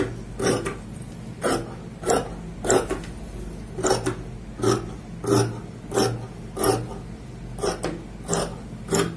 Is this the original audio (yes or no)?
yes